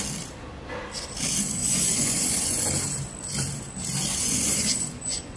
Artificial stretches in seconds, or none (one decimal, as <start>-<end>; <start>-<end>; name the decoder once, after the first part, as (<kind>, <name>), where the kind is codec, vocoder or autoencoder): 1.6-2.7 (vocoder, Vocos); 4.2-5.4

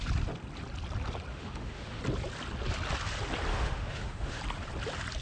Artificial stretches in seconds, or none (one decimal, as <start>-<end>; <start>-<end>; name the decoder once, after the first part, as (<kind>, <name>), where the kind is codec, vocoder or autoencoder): 1.3-2.0 (autoencoder, DAC-VAE); 3.5-4.4

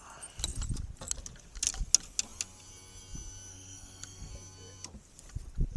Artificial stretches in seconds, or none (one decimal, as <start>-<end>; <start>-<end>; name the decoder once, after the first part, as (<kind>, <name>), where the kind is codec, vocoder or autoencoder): 3.5-4.3 (codec, SNAC)

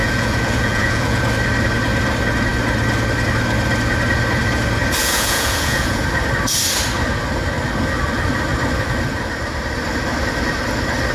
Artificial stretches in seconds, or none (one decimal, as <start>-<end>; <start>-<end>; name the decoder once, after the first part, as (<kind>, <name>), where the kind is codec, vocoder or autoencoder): 0.0-1.2 (vocoder, Vocos); 5.0-6.0

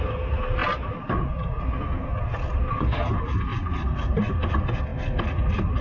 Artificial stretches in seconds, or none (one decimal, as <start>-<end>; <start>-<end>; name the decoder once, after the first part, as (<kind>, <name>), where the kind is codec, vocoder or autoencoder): none

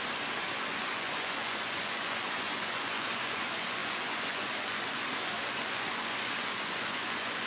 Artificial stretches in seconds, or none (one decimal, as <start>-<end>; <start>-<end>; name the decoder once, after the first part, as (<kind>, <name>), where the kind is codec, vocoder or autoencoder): 0.0-7.5 (vocoder, Vocos)

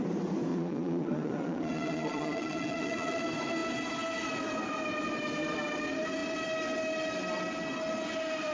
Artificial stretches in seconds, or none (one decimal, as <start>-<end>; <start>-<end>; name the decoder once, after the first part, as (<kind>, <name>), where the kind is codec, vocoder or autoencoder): 0.5-3.2 (vocoder, Vocos)

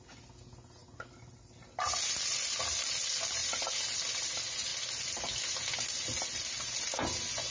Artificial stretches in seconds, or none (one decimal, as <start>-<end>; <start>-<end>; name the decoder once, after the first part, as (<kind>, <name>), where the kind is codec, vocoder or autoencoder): none